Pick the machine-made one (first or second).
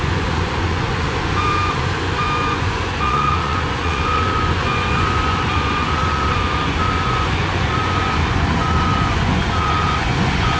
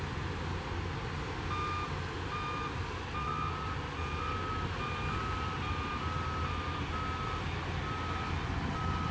first